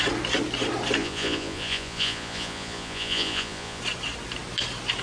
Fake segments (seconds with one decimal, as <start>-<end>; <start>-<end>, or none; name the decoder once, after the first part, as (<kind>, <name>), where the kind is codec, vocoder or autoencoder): 1.0-3.8 (vocoder, Vocos)